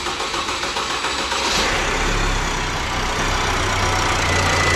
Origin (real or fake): real